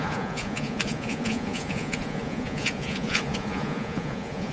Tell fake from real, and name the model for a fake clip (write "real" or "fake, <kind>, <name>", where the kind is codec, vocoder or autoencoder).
fake, vocoder, Vocos